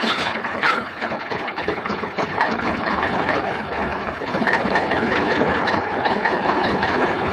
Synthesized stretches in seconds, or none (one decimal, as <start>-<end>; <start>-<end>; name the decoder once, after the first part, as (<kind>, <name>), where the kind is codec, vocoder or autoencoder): 0.0-7.3 (codec, HILCodec)